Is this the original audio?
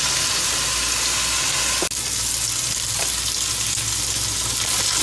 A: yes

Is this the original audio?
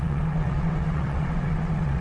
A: no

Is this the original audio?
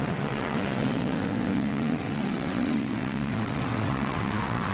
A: no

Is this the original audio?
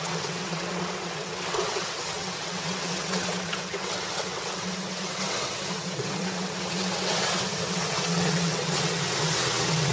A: no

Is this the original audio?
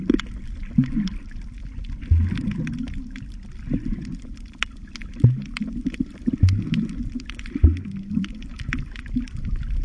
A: yes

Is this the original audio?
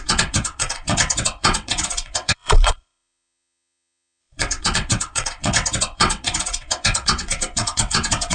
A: no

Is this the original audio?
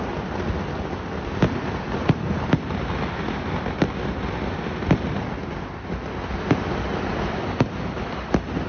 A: yes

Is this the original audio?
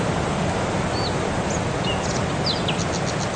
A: yes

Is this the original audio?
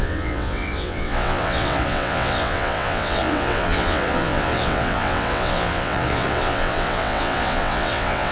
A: no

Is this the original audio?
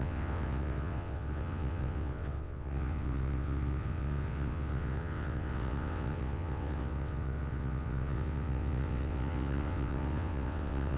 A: no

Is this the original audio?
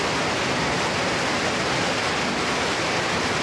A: yes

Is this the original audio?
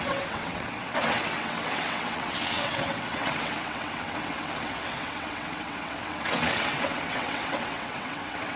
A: no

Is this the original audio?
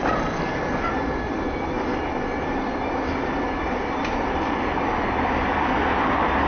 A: yes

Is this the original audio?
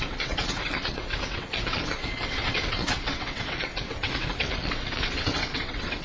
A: no